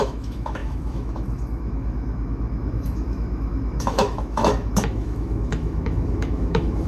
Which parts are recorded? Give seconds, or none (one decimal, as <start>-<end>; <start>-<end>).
none